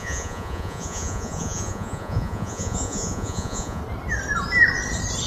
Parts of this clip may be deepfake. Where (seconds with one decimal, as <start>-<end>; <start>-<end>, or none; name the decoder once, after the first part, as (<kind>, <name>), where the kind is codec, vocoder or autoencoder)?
0.0-3.8 (vocoder, Vocos)